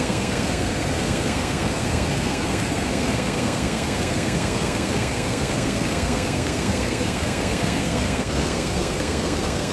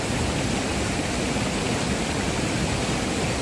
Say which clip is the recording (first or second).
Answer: second